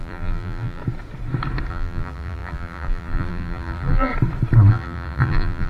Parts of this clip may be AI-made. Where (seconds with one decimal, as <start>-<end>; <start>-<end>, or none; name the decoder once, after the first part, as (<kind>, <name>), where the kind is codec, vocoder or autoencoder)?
0.0-0.8 (vocoder, BigVGAN v2); 1.7-4.1; 4.7-5.7